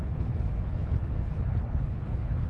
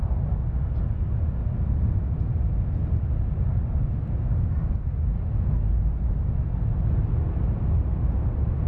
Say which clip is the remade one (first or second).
first